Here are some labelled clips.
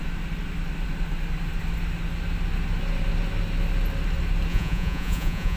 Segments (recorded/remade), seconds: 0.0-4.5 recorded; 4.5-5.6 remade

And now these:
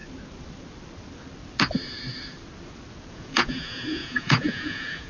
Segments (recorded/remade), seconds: 0.0-3.1 recorded; 3.1-5.1 remade